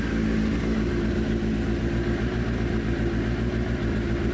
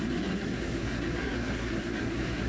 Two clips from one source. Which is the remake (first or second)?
second